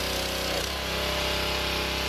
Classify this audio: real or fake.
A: real